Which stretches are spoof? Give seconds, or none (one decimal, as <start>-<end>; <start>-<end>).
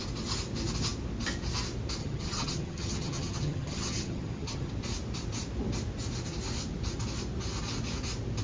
2.0-4.7